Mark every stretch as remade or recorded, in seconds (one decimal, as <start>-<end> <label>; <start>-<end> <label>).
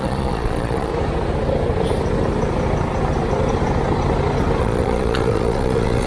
0.0-0.9 remade; 0.9-4.6 recorded; 4.6-6.1 remade